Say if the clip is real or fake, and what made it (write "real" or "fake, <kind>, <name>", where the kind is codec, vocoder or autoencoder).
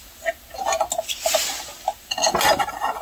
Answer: real